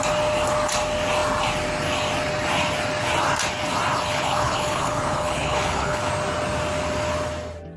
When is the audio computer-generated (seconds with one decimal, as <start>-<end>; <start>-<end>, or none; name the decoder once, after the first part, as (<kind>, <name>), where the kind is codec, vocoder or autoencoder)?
4.1-6.1 (codec, HILCodec)